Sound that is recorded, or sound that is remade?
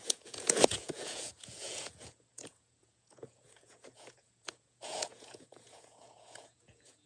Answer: remade